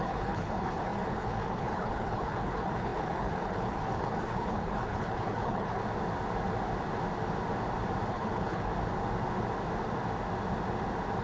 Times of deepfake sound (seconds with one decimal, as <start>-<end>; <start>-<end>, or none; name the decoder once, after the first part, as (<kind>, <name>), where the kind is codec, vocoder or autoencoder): 0.0-5.8 (codec, HILCodec); 8.1-8.7